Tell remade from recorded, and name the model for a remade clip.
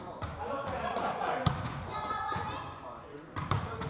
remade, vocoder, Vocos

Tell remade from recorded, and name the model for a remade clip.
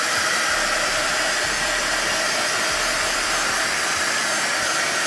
remade, vocoder, BigVGAN v2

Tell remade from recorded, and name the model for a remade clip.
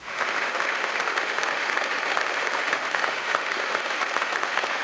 remade, autoencoder, DAC-VAE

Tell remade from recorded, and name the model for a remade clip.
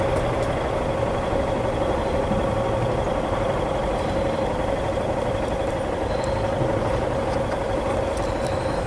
recorded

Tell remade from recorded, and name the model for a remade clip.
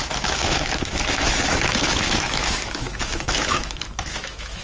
remade, autoencoder, DAC-VAE